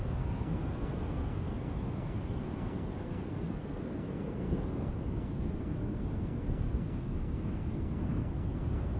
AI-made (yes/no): yes